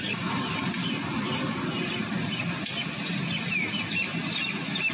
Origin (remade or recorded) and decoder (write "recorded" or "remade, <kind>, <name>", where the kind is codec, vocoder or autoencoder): recorded